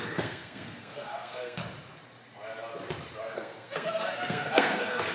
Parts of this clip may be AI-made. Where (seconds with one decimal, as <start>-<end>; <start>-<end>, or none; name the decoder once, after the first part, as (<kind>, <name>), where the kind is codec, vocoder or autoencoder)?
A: 0.0-1.6 (codec, SNAC); 3.2-5.1